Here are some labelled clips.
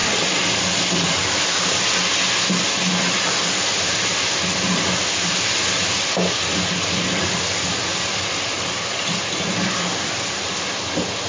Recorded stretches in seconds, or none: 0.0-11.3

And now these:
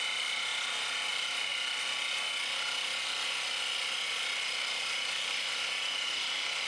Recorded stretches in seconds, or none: 0.0-6.7

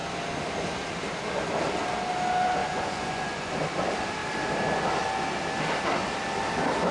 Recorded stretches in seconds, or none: 0.0-2.6; 3.5-6.9